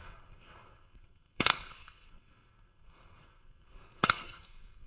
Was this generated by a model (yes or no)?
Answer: yes